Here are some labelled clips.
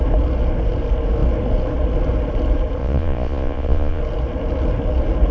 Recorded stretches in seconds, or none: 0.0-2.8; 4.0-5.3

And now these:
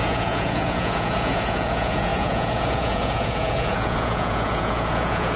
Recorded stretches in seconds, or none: none

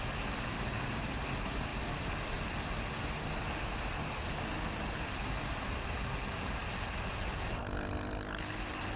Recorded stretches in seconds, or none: 0.0-9.0

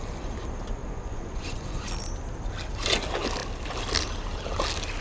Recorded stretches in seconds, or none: 0.0-0.8; 1.9-5.0